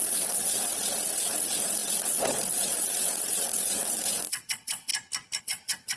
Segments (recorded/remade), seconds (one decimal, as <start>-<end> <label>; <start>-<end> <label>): 0.0-4.9 remade; 4.9-5.4 recorded; 5.4-6.0 remade